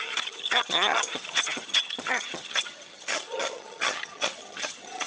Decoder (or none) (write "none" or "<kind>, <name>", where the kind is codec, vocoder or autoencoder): vocoder, HiFi-GAN